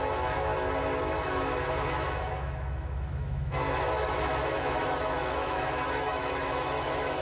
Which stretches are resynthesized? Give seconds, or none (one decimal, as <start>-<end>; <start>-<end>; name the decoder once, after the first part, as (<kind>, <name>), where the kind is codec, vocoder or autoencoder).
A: 0.0-0.5 (autoencoder, DAC-VAE); 1.1-7.2